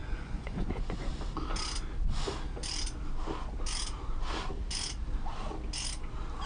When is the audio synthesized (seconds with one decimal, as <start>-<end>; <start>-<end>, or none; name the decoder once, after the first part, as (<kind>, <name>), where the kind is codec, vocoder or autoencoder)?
0.0-0.8 (vocoder, Vocos)